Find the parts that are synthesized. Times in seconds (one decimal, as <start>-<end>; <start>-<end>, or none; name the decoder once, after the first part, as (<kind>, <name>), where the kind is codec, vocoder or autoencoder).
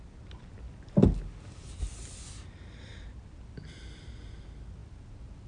none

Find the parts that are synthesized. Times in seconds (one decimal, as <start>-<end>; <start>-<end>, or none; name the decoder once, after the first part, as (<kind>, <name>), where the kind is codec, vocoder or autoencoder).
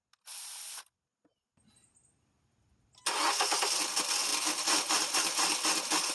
none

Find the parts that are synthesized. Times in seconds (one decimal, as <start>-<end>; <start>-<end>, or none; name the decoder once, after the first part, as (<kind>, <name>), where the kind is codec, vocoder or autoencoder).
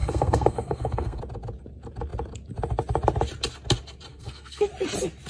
0.0-1.2 (codec, SNAC); 4.1-4.7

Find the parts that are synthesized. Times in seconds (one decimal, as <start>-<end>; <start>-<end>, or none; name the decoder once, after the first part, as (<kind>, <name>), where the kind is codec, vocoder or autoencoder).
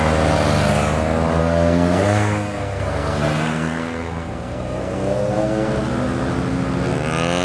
1.4-5.8 (codec, SNAC)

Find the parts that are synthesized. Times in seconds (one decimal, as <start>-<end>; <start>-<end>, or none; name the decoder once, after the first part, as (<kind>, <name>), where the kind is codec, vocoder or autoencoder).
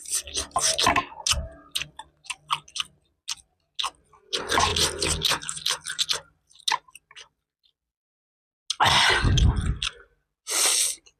none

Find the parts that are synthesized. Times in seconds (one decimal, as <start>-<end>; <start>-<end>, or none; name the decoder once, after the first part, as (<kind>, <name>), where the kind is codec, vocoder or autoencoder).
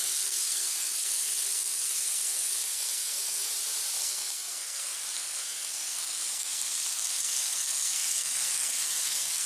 0.0-3.5 (codec, SNAC); 4.0-9.5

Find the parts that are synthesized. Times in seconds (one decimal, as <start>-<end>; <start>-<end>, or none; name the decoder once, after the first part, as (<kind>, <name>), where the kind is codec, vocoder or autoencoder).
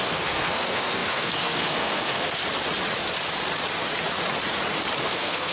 0.0-2.4 (codec, SNAC); 5.0-5.5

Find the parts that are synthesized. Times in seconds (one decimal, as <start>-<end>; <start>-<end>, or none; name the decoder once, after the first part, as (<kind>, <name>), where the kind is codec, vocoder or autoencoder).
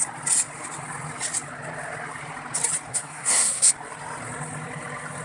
2.9-3.7 (codec, SNAC)